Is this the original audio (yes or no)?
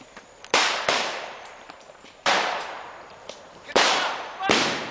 no